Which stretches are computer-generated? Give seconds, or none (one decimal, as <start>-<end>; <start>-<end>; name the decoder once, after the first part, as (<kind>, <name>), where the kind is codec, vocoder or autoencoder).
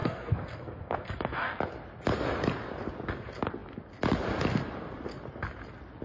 0.0-1.6 (codec, SNAC)